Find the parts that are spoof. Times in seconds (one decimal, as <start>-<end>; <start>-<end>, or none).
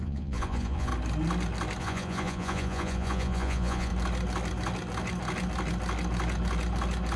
0.0-0.9; 1.8-3.9